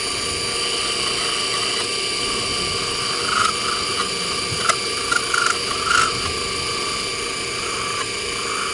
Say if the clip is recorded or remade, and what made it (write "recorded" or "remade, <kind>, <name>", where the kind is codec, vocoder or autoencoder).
recorded